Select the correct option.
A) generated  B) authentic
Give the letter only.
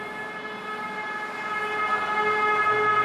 B